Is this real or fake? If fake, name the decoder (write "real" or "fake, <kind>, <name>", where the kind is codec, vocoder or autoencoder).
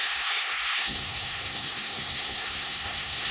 fake, codec, SNAC